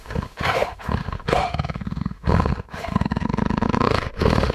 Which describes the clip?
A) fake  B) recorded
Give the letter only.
A